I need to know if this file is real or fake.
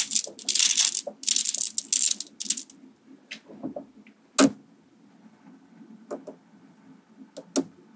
real